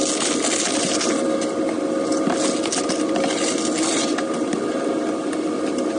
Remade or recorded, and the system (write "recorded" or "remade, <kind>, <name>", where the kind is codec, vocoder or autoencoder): recorded